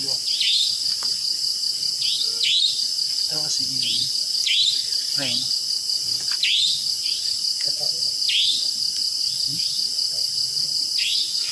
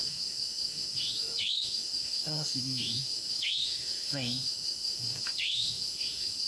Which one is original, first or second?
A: first